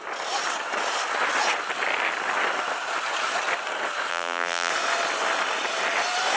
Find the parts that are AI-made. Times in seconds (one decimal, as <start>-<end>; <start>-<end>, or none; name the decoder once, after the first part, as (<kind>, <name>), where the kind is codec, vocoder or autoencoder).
4.1-4.7 (vocoder, BigVGAN v2)